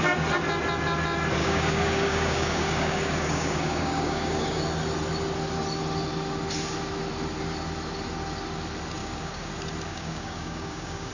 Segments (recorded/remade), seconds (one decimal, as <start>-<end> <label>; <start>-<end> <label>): 0.0-1.4 recorded; 1.4-4.6 remade; 4.6-9.0 recorded; 9.0-9.5 remade; 9.5-9.9 recorded; 9.9-11.1 remade